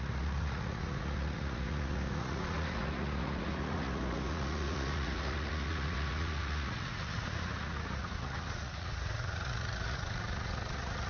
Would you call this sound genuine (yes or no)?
no